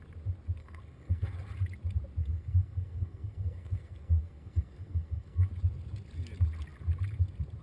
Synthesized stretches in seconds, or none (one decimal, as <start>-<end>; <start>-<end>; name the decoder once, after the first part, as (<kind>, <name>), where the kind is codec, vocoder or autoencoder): 0.6-1.4 (codec, SNAC); 2.2-5.5